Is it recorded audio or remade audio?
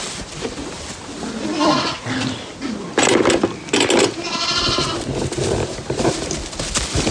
recorded